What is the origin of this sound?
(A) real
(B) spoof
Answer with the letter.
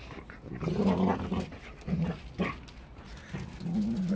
A